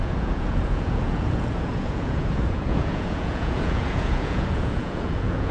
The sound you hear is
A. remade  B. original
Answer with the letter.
A